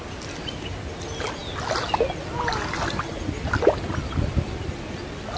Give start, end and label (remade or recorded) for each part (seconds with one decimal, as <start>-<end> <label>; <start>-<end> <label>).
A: 0.0-5.4 recorded